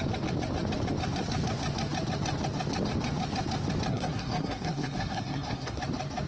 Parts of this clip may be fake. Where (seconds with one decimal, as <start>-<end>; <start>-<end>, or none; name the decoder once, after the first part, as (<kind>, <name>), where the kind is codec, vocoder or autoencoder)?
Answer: 3.9-5.8 (codec, SNAC)